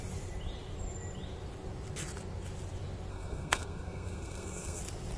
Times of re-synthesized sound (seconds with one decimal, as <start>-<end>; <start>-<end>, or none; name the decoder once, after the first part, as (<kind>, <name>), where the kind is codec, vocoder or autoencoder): 3.1-4.8 (codec, SNAC)